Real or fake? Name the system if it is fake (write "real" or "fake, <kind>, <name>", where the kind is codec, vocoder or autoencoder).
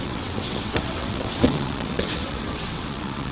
fake, vocoder, WaveNeXt